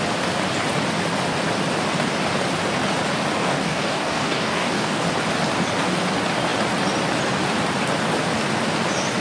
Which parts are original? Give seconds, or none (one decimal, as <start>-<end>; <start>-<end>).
0.0-3.4; 5.0-9.2